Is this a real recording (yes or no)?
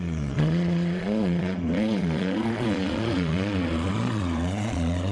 no